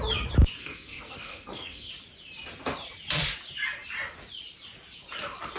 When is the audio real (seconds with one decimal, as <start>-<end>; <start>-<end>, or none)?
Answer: 0.0-0.6; 1.9-5.6